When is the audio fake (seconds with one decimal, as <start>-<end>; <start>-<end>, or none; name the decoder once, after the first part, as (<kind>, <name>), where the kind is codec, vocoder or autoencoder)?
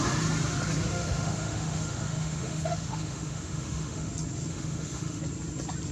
0.9-4.1 (autoencoder, DAC-VAE); 4.5-5.2